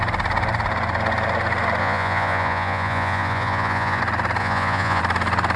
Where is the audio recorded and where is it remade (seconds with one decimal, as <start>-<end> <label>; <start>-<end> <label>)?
0.0-1.8 recorded; 1.8-4.0 remade; 4.0-4.4 recorded; 4.4-5.0 remade; 5.0-5.6 recorded